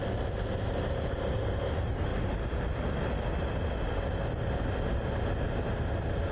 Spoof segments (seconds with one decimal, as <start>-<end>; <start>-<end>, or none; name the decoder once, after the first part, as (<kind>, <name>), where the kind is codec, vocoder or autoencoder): none